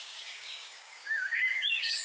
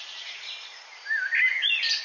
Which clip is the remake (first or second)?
first